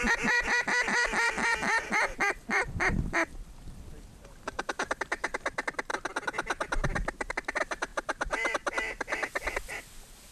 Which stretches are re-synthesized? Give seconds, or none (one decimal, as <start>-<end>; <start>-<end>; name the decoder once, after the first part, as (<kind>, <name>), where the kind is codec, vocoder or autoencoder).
0.0-5.9 (vocoder, BigVGAN v2); 7.3-10.3